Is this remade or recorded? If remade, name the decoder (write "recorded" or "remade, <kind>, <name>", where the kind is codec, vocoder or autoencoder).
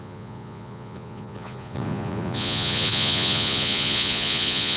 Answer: remade, vocoder, Vocos